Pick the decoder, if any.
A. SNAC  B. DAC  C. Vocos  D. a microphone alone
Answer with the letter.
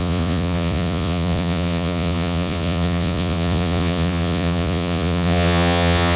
C